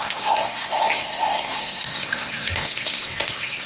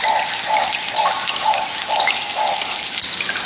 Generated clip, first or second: first